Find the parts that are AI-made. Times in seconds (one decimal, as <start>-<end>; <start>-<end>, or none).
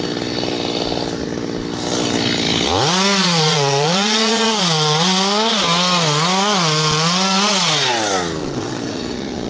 3.2-4.6; 8.4-9.5